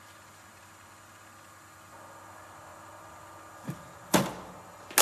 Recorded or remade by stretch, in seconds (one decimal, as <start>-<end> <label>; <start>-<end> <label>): 0.0-5.0 recorded